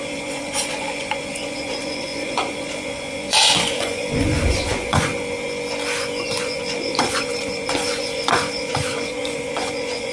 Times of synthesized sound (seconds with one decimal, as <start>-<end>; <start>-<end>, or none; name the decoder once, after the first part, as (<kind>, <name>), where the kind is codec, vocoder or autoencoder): 0.0-5.1 (vocoder, Vocos); 6.3-10.1